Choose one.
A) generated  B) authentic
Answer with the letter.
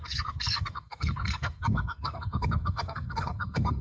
A